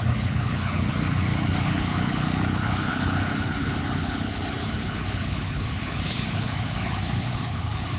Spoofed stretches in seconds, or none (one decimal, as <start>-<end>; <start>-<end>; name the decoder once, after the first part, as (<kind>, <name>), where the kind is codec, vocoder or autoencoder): 0.0-8.0 (codec, HILCodec)